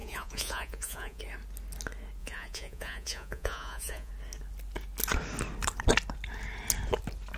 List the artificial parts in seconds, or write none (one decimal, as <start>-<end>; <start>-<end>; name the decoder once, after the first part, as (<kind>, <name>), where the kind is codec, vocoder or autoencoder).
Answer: 0.0-1.2 (vocoder, Vocos); 2.2-4.1